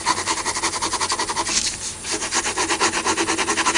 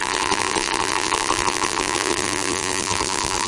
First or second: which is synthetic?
second